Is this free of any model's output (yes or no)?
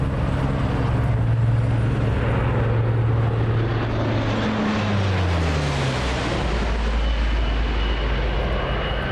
yes